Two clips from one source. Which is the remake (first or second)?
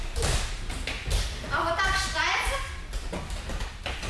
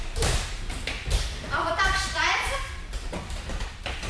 second